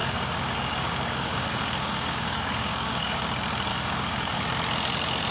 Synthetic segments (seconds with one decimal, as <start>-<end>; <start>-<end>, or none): 0.0-3.2; 3.7-4.4